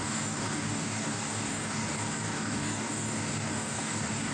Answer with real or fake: fake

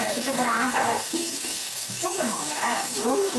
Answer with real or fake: fake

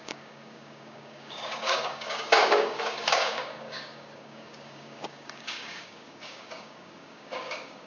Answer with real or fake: fake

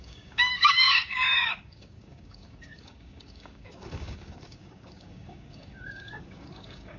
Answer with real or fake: fake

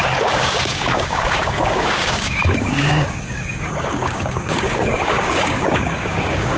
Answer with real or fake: fake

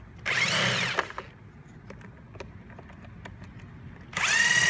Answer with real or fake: real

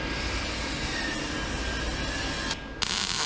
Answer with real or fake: real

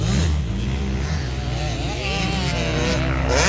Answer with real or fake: real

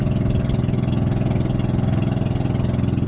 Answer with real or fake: real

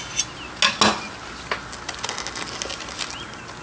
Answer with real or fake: real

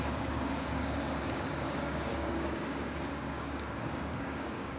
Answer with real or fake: fake